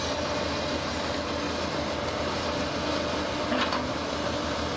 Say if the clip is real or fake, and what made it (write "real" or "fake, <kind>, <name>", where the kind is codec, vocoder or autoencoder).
real